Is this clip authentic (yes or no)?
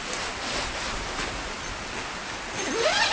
yes